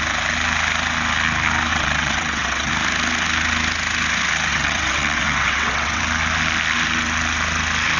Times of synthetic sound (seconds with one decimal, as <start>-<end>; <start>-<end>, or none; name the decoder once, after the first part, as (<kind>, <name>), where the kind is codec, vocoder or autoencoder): 1.7-2.7 (vocoder, WaveNeXt); 4.5-6.0